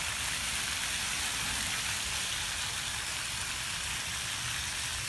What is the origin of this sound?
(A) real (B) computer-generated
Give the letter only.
A